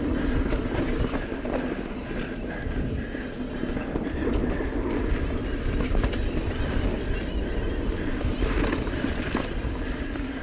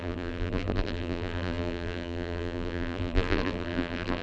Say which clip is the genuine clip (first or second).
first